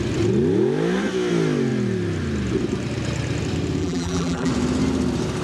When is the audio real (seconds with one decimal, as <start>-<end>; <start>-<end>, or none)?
0.0-3.8; 4.5-5.4